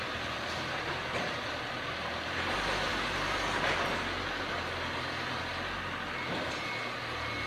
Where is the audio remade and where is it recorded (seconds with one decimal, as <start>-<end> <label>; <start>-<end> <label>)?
0.0-7.5 recorded